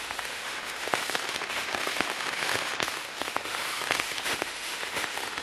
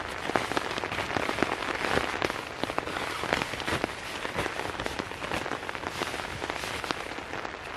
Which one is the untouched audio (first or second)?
second